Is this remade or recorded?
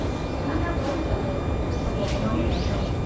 recorded